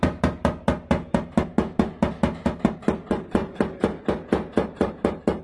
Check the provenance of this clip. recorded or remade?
recorded